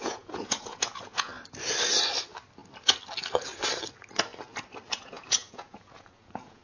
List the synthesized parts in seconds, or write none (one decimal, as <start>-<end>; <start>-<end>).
0.0-1.3; 5.0-6.6